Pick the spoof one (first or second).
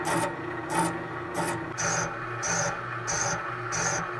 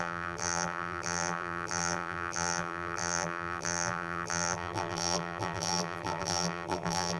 second